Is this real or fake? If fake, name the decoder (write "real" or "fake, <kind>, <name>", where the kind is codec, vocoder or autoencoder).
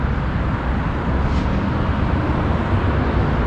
real